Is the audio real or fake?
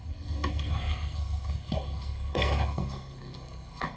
fake